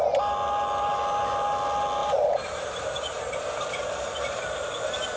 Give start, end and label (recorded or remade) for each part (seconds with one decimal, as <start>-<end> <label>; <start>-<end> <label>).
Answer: 0.0-2.0 recorded; 2.0-3.2 remade; 3.2-5.2 recorded